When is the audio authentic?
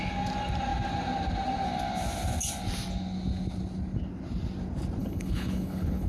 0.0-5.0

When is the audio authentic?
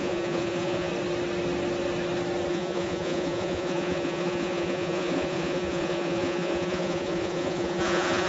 0.9-2.5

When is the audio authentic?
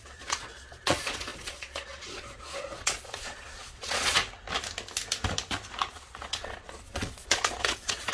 4.2-5.9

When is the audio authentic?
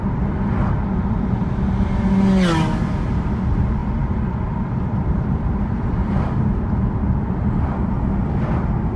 0.0-3.8; 6.4-9.0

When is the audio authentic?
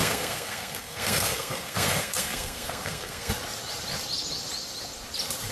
3.3-5.5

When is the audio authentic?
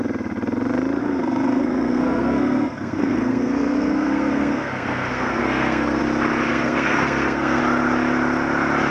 0.0-1.0; 6.0-6.5; 7.6-8.9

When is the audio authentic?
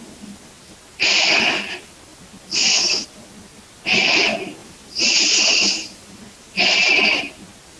0.0-4.6; 6.6-7.8